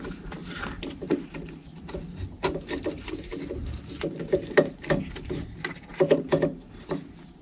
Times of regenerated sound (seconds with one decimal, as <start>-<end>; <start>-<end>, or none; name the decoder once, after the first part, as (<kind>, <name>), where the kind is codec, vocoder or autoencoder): none

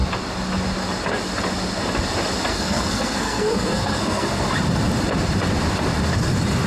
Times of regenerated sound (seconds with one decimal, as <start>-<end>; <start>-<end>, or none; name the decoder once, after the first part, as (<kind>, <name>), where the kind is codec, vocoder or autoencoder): 2.5-4.4 (codec, SNAC)

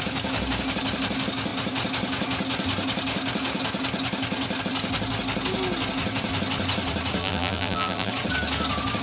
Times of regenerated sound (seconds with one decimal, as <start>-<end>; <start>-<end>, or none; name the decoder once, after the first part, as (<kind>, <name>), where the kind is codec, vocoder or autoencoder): 7.2-8.1 (vocoder, BigVGAN v2)

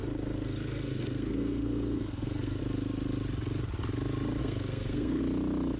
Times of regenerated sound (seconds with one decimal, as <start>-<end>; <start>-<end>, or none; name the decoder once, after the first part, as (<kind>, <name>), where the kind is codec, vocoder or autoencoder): 0.0-2.6 (codec, SNAC); 4.4-5.2

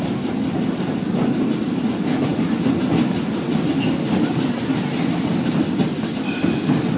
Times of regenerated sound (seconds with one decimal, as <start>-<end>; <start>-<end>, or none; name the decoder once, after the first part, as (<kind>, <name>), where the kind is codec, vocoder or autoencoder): none

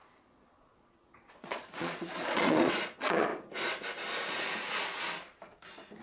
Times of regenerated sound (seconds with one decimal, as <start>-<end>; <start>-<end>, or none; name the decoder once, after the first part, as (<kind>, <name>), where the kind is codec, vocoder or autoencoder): 0.0-3.3 (vocoder, Vocos)